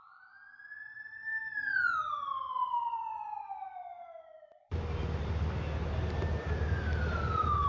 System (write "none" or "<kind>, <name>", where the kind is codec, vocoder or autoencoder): none